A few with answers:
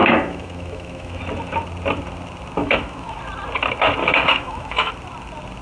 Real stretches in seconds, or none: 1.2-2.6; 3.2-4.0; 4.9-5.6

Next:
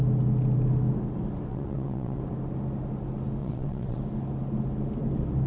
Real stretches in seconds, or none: 0.0-1.5; 2.2-3.4; 4.0-5.5

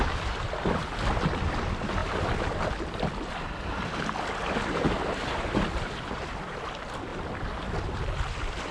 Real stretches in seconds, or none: 0.0-8.7

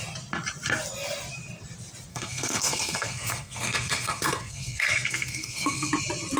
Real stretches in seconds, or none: 0.0-2.1; 5.9-6.4

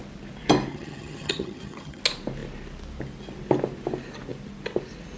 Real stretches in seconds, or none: 0.0-0.7; 2.0-5.2

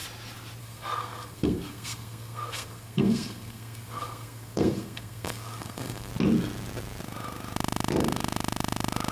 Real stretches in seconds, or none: 0.0-0.6; 6.1-9.1

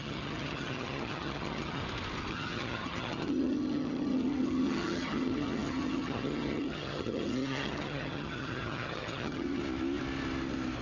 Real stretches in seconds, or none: 1.8-2.3; 9.6-10.8

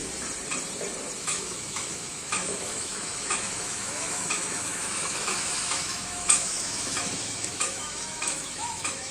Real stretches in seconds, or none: 0.0-1.2